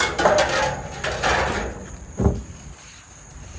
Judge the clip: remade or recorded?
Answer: remade